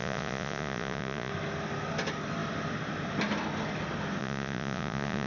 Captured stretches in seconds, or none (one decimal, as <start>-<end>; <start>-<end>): 1.3-4.2

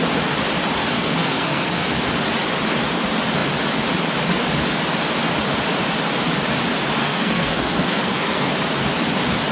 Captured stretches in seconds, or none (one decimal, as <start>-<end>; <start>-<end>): 0.0-0.8; 2.0-7.0; 8.5-9.5

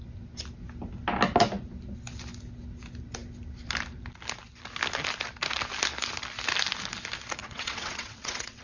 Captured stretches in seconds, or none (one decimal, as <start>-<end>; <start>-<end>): 0.0-7.4

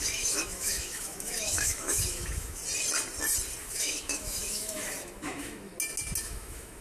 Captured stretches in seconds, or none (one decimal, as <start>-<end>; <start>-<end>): 2.6-3.6; 5.7-6.2

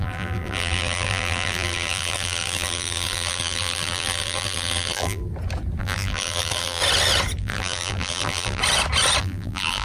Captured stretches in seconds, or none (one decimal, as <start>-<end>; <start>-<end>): 5.2-5.8; 6.8-7.4; 8.6-9.2

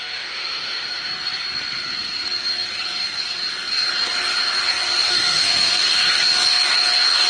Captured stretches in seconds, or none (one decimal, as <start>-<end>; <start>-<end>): 1.1-5.1; 5.8-7.3